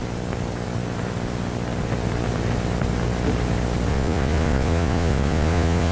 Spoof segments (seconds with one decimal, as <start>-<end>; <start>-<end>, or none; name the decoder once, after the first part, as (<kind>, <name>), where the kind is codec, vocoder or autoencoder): 3.9-5.9 (vocoder, Vocos)